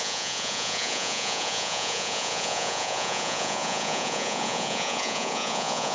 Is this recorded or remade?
remade